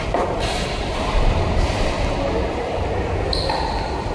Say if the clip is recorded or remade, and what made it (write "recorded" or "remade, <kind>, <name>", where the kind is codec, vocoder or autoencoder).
remade, vocoder, BigVGAN v2